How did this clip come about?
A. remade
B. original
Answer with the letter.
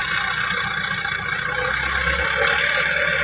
B